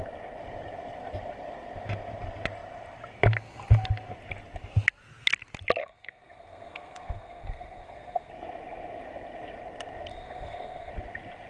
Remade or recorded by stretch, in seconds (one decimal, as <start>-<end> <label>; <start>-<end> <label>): 0.0-5.8 recorded; 5.8-8.3 remade; 8.3-10.1 recorded; 10.1-10.9 remade; 10.9-11.5 recorded